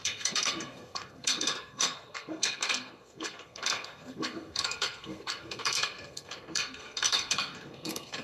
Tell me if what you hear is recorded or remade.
remade